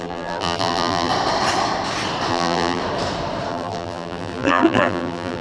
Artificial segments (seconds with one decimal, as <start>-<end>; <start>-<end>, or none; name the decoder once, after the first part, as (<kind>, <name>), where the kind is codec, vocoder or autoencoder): 0.0-1.1 (vocoder, BigVGAN v2); 2.3-2.8; 3.5-5.4

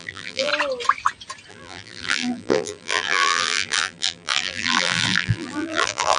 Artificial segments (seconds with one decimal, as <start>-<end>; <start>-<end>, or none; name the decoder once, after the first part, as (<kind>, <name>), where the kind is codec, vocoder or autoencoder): 0.0-0.5 (vocoder, BigVGAN v2); 1.5-6.2

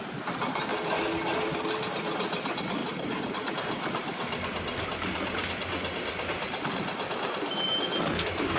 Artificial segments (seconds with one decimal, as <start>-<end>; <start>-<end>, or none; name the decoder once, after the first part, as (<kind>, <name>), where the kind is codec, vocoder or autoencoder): 2.8-3.5 (vocoder, BigVGAN v2)

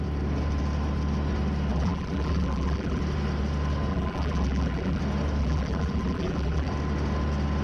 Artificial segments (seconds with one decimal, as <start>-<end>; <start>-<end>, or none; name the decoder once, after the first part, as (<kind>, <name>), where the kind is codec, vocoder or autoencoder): 1.7-3.0 (vocoder, BigVGAN v2); 3.9-5.0; 5.4-6.7

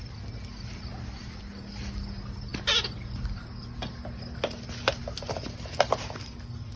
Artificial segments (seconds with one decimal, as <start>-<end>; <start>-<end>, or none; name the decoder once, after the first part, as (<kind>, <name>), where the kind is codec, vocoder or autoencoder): none

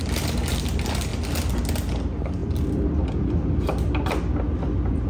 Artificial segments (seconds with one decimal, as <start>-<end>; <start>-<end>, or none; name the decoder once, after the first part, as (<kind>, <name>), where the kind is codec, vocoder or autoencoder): none

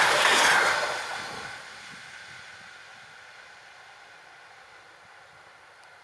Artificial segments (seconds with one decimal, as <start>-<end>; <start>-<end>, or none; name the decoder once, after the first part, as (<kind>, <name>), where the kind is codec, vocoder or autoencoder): none

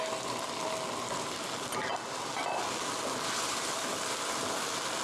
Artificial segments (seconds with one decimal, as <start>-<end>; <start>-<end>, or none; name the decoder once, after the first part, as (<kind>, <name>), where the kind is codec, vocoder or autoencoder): none